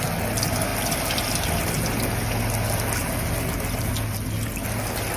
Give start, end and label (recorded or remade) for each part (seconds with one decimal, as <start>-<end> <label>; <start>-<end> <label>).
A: 0.0-5.2 recorded